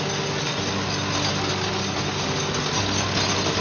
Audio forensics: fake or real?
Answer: real